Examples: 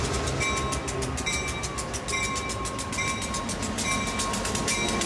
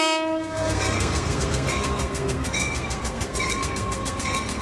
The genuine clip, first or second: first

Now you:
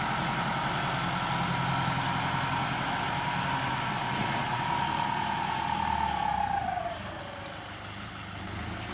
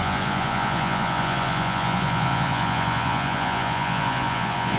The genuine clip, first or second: first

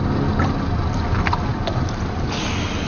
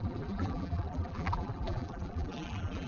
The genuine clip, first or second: first